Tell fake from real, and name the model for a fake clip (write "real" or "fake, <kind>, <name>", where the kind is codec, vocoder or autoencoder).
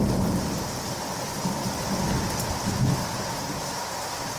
real